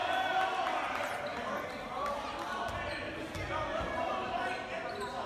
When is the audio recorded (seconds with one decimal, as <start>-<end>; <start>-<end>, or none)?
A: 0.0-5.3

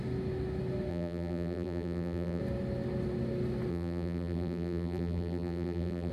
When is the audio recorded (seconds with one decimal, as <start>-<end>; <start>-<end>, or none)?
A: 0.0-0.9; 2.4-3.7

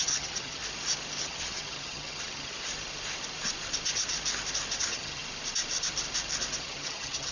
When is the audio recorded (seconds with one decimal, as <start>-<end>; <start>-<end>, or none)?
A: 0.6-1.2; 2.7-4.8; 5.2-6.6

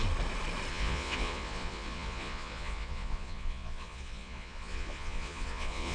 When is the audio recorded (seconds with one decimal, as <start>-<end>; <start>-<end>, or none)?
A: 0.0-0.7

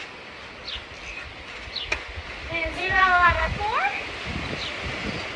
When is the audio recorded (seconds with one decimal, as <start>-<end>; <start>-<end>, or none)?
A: 0.0-2.8; 3.5-5.4

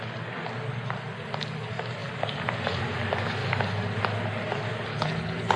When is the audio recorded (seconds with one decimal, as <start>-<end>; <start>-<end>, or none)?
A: 0.0-4.9

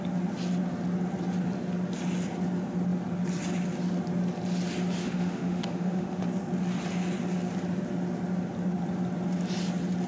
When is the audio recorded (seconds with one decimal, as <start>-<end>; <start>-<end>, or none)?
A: 0.0-5.0; 6.2-10.1